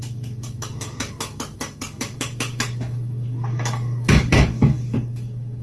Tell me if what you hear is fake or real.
fake